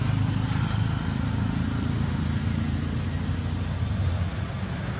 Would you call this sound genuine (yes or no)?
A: yes